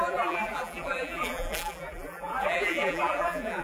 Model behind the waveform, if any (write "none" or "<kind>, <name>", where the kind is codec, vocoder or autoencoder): vocoder, BigVGAN v2